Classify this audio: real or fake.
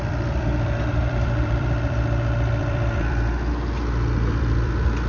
fake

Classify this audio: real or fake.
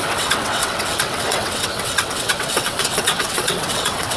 fake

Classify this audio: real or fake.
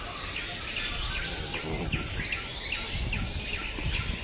real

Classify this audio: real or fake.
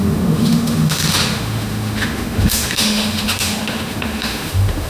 fake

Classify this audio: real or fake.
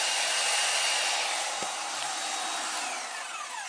real